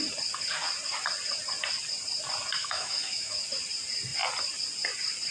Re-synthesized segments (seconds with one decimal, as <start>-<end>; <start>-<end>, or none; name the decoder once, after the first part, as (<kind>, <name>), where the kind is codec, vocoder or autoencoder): 2.6-3.4 (autoencoder, DAC-VAE)